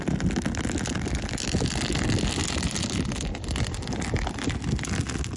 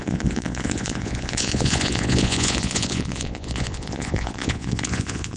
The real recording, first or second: first